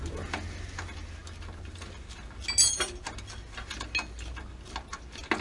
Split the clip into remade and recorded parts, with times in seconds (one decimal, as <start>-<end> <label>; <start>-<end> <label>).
0.0-5.4 recorded